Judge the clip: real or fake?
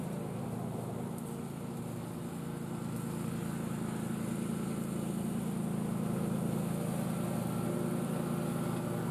real